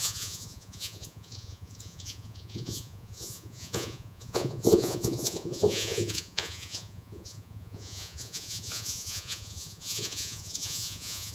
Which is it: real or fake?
fake